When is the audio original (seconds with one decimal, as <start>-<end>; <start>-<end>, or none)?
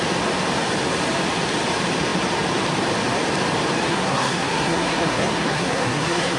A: 0.0-3.9